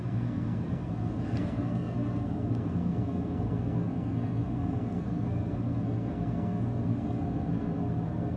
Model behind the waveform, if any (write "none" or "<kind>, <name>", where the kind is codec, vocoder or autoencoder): codec, SNAC